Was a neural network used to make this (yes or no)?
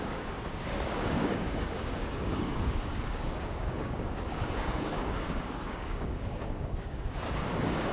yes